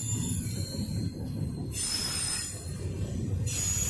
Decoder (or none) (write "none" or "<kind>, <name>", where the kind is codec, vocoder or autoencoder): none